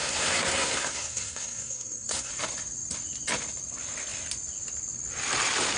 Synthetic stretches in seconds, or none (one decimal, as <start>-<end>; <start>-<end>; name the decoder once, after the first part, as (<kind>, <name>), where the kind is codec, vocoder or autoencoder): 0.0-2.3 (codec, SNAC)